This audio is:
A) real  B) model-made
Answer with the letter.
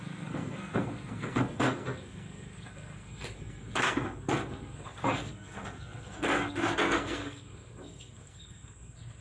B